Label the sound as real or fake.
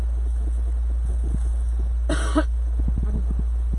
real